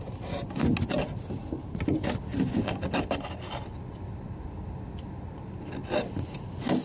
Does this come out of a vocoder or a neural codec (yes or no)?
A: no